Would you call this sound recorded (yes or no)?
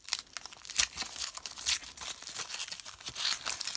yes